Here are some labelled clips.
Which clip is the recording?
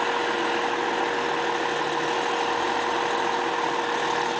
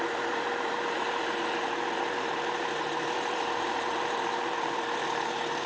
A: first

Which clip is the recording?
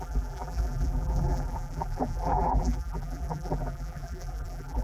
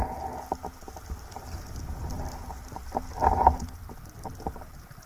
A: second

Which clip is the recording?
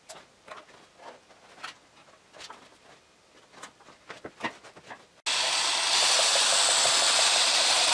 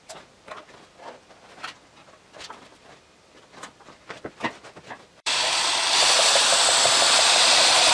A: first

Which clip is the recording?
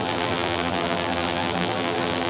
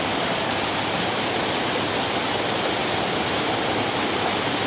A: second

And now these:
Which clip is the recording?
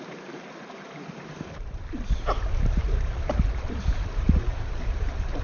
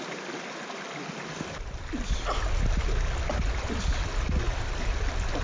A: second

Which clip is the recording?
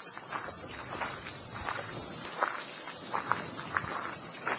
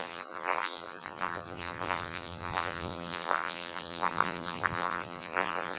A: first